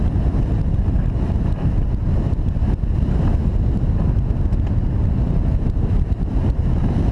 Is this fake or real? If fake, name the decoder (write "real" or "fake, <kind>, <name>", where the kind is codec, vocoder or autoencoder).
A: real